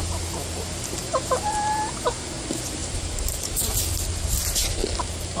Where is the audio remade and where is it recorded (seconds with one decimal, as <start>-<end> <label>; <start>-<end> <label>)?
0.0-1.1 recorded; 1.1-2.2 remade; 2.2-2.8 recorded; 2.8-3.8 remade; 3.8-4.4 recorded; 4.4-4.9 remade; 4.9-5.4 recorded